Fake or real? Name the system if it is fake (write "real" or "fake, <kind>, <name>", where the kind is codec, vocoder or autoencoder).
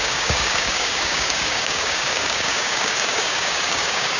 fake, codec, DAC